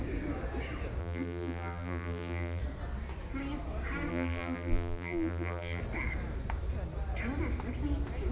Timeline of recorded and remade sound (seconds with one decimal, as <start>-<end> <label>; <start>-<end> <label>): 0.0-1.0 recorded; 1.0-2.6 remade; 2.6-4.1 recorded; 4.1-5.8 remade; 5.8-8.3 recorded

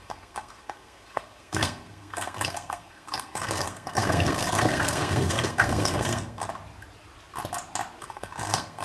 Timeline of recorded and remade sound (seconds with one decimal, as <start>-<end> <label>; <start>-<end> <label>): 0.0-6.5 remade; 6.5-8.0 recorded; 8.0-8.8 remade

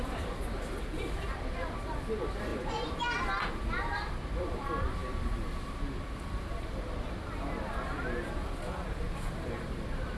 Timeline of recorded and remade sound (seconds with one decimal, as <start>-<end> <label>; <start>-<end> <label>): 0.0-5.0 remade; 5.0-8.3 recorded; 8.3-10.2 remade

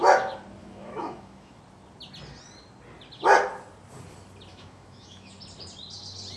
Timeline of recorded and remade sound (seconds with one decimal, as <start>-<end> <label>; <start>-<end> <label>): 0.0-0.6 recorded; 0.6-1.6 remade; 1.6-4.5 recorded; 4.5-5.4 remade; 5.4-6.4 recorded

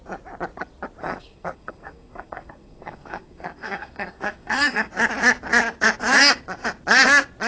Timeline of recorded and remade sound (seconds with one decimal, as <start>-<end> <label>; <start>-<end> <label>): 0.0-1.0 recorded; 1.0-4.9 remade; 4.9-7.5 recorded